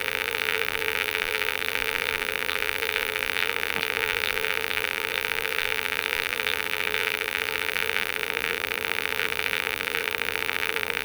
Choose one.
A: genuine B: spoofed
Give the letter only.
B